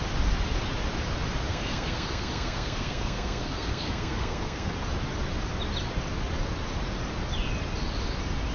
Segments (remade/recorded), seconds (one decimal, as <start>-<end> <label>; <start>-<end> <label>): 0.0-1.5 recorded; 1.5-4.7 remade; 4.7-8.5 recorded

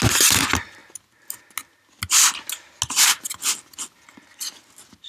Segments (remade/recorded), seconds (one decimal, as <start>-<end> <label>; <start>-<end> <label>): 0.0-5.1 recorded

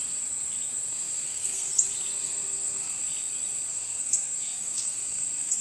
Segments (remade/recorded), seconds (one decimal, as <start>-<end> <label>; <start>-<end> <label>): 0.0-0.9 recorded; 0.9-1.7 remade; 1.7-2.2 recorded; 2.2-3.0 remade; 3.0-3.7 recorded; 3.7-5.6 remade

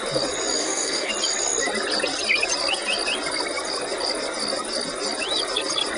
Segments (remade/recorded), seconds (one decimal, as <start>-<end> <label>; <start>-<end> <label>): 0.0-0.6 recorded; 0.6-1.1 remade; 1.1-6.0 recorded

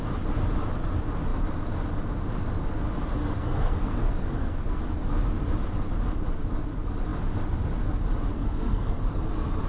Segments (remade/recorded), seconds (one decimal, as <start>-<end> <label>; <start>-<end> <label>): 0.0-3.2 recorded; 3.2-4.8 remade; 4.8-8.3 recorded; 8.3-9.0 remade; 9.0-9.7 recorded

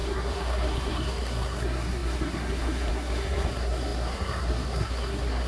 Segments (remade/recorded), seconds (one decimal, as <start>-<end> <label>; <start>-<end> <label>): 0.0-5.5 remade

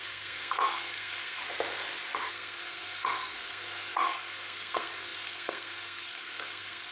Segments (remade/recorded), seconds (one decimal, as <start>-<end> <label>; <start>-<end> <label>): 0.0-1.4 remade; 1.4-2.3 recorded; 2.3-6.9 remade

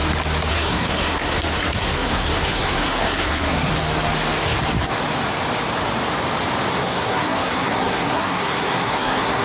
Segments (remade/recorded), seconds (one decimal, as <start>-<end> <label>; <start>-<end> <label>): 0.0-0.5 recorded; 0.5-3.7 remade; 3.7-6.7 recorded; 6.7-9.4 remade